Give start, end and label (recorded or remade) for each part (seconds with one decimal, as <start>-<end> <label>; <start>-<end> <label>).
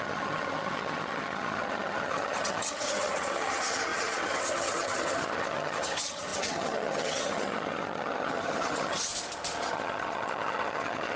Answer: 0.0-9.1 remade; 9.1-9.6 recorded; 9.6-11.2 remade